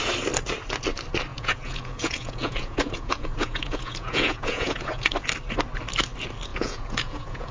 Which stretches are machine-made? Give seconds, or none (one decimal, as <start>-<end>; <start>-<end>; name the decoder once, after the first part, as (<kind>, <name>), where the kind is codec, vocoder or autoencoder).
1.3-5.1 (vocoder, Vocos); 6.5-7.5